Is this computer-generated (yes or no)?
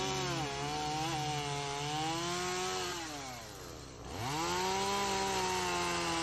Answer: no